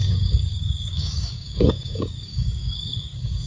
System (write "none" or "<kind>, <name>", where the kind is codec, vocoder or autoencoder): codec, DAC